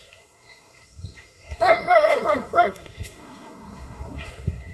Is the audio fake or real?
fake